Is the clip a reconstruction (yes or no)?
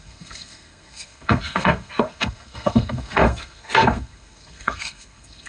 yes